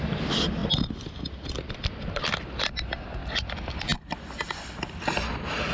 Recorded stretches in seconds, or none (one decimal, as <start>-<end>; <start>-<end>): 0.0-5.7